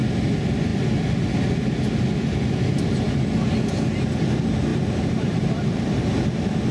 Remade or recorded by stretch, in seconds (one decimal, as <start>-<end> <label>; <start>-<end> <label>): 0.0-4.7 recorded; 4.7-6.0 remade; 6.0-6.7 recorded